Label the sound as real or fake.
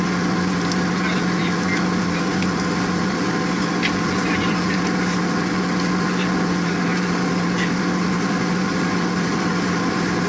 real